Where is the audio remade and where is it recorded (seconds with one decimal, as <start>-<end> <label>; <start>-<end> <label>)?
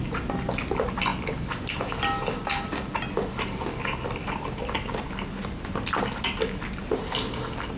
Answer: 0.0-7.8 recorded